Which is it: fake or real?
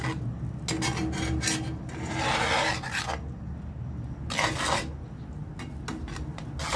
real